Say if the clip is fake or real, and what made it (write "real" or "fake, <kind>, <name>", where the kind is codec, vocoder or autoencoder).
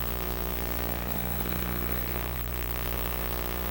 fake, autoencoder, DAC-VAE